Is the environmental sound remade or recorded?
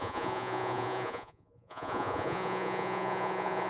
remade